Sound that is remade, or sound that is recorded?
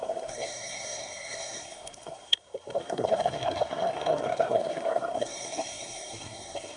remade